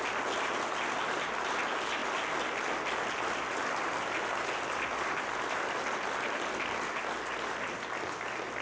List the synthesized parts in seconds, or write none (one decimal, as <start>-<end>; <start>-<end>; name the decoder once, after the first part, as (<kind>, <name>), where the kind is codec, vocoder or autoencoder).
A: none